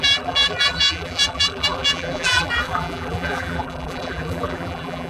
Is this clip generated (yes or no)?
yes